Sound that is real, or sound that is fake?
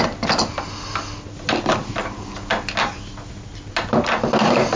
real